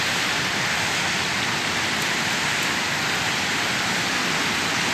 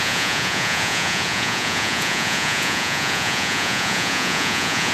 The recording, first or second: first